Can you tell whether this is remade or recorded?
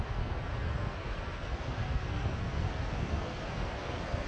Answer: remade